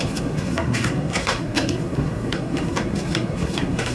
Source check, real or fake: fake